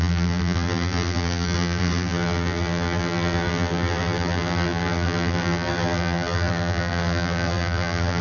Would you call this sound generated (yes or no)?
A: yes